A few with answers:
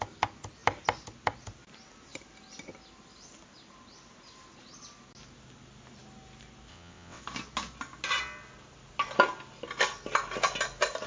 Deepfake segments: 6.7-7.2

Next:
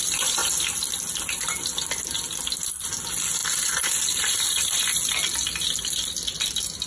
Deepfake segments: none

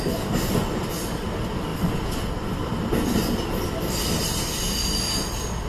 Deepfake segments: none

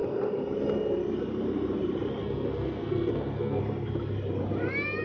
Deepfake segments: 2.2-3.6